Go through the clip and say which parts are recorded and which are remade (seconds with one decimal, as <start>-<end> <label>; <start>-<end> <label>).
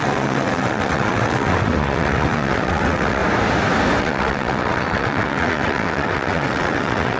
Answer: 0.0-3.2 remade; 3.2-4.0 recorded; 4.0-7.2 remade